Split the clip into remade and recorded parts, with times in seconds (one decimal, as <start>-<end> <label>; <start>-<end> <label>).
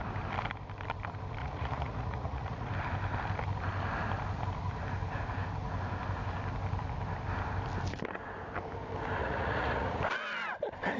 0.0-1.4 recorded; 1.4-2.7 remade; 2.7-9.2 recorded; 9.2-10.0 remade; 10.0-11.0 recorded